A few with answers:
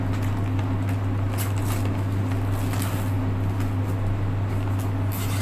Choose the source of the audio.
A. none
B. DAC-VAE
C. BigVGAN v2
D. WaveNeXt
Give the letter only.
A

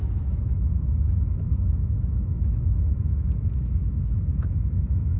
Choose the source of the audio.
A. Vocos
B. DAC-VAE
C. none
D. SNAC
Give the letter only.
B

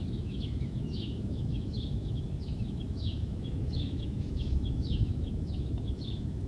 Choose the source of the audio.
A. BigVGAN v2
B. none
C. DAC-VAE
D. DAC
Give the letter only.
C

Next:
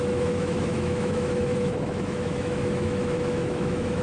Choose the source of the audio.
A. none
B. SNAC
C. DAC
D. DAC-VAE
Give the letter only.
D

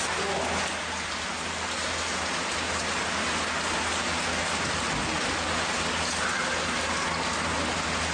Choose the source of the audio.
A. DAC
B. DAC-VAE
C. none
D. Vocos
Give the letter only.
C